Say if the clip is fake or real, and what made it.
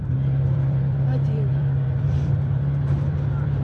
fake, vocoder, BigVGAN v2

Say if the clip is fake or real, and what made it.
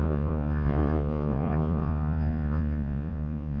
fake, vocoder, Vocos